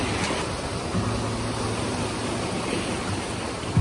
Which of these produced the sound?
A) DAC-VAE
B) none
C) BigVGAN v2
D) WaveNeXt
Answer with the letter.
B